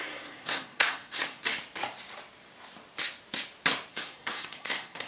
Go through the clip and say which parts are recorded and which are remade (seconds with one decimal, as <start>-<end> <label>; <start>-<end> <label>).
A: 0.0-1.4 remade; 1.4-3.9 recorded; 3.9-5.1 remade